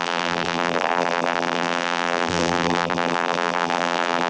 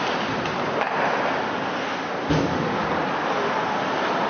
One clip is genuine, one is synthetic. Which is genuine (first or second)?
second